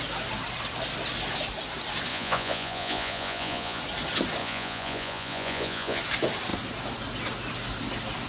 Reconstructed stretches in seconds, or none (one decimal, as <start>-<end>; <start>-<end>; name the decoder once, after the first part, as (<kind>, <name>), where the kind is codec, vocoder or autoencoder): 2.1-3.8 (vocoder, Vocos); 4.4-6.0